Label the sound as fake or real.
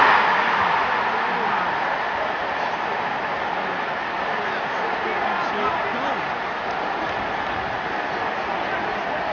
real